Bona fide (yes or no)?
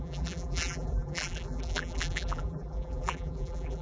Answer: no